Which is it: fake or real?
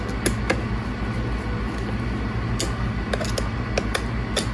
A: real